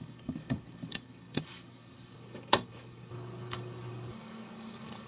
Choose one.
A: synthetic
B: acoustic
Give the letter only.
A